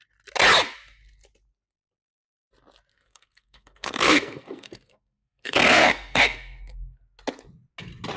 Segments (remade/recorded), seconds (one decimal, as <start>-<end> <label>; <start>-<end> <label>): 0.0-2.9 recorded; 2.9-7.0 remade; 7.0-8.2 recorded